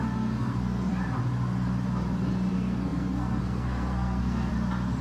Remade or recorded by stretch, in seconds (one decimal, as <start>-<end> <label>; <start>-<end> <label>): 0.0-0.9 remade; 0.9-2.5 recorded; 2.5-4.5 remade; 4.5-5.0 recorded